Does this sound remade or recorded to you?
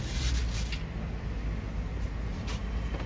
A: recorded